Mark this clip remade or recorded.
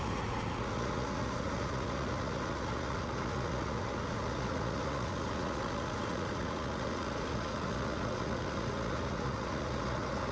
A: remade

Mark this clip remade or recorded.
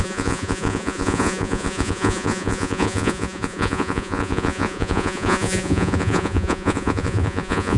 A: remade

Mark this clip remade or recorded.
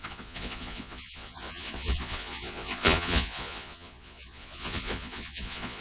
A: remade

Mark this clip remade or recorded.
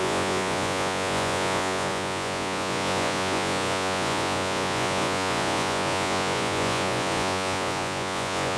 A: remade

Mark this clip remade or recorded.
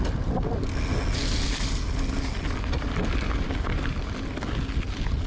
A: recorded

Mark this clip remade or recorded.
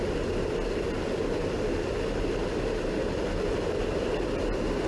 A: recorded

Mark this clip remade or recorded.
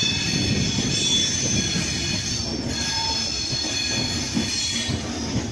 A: recorded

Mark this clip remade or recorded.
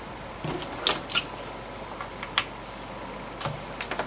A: recorded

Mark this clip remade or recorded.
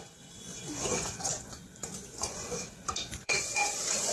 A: remade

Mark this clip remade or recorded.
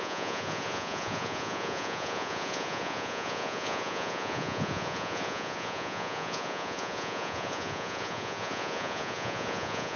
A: remade